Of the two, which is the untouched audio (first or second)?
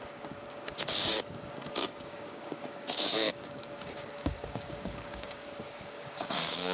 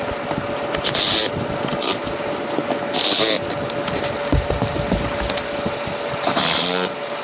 second